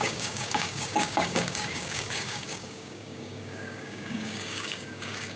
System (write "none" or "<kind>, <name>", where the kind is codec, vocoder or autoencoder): codec, DAC